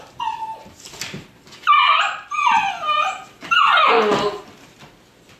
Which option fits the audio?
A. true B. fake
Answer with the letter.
A